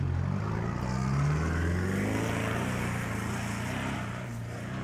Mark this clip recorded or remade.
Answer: recorded